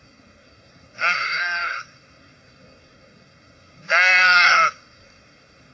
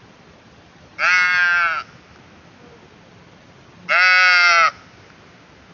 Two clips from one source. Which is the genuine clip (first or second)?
second